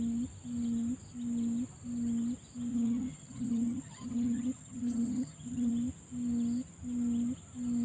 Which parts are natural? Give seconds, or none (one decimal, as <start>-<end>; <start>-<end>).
0.0-2.7; 5.7-7.8